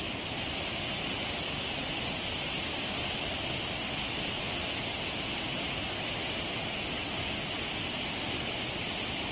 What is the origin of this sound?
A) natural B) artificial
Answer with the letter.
A